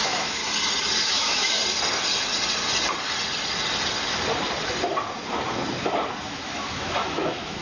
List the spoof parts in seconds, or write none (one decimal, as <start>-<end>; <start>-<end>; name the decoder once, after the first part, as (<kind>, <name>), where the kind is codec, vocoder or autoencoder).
0.0-0.4 (autoencoder, DAC-VAE); 1.0-1.6; 6.2-7.6